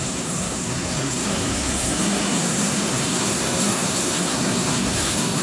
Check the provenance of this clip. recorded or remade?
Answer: remade